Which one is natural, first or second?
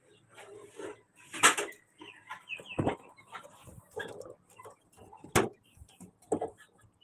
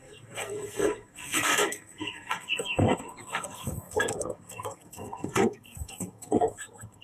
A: first